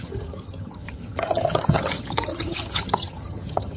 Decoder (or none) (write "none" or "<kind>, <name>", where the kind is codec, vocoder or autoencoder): vocoder, HiFi-GAN